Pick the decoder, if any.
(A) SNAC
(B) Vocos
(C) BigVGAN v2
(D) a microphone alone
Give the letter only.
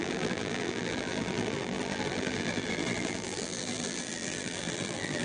C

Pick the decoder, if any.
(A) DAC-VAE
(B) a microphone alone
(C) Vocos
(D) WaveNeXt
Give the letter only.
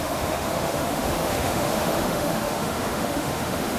A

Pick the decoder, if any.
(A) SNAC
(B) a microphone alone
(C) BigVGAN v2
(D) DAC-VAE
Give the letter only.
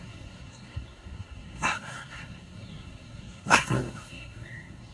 A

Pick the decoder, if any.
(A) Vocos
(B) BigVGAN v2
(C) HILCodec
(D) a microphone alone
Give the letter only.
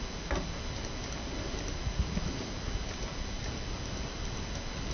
D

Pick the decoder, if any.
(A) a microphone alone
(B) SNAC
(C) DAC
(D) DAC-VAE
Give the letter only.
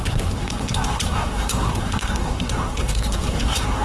B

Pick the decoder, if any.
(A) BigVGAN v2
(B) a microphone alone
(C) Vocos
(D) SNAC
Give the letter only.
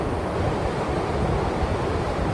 B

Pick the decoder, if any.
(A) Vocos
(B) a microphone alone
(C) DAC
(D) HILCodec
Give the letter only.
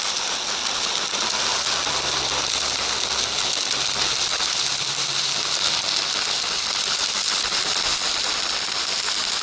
B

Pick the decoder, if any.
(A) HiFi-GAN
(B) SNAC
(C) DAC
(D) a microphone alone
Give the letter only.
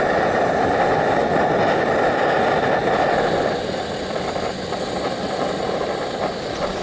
D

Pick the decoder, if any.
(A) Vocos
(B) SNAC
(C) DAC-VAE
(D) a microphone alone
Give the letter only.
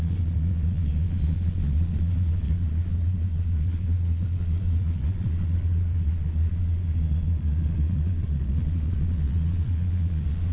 A